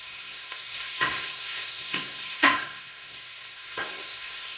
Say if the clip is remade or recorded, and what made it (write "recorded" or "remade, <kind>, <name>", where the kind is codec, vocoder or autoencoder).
remade, codec, SNAC